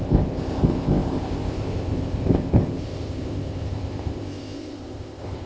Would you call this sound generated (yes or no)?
yes